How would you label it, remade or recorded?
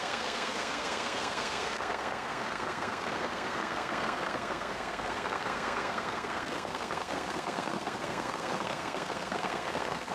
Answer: remade